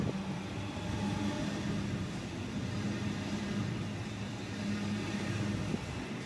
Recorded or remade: recorded